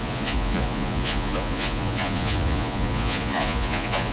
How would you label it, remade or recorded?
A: remade